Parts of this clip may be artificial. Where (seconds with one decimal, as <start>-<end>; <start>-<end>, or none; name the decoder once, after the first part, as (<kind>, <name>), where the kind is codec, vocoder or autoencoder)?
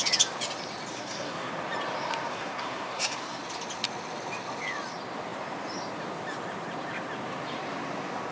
0.9-1.5 (codec, SNAC); 2.3-3.4